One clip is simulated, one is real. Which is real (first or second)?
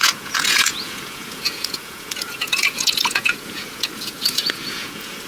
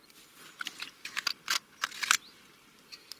second